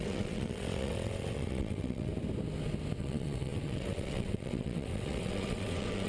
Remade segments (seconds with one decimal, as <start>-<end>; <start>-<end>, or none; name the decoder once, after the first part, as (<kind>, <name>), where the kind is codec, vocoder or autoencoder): 0.0-2.1 (vocoder, WaveNeXt); 3.0-6.1